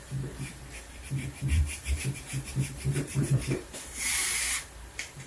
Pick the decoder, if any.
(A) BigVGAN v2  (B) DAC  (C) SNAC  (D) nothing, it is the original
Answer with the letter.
A